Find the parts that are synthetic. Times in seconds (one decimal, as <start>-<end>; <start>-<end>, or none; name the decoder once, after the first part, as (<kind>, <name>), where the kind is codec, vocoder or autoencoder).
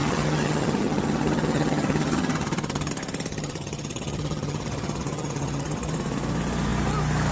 0.0-2.9 (vocoder, HiFi-GAN); 3.3-5.9